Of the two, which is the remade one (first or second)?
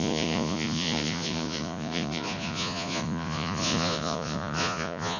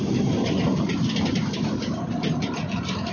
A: first